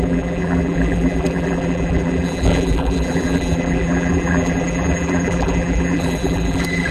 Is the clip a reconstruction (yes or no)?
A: yes